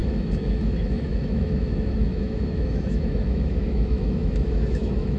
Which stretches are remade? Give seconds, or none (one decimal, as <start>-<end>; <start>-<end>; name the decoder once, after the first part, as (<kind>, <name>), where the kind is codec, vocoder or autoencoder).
0.0-5.2 (autoencoder, DAC-VAE)